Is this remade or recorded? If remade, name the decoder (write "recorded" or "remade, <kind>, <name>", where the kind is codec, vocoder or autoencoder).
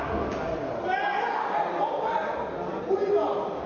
recorded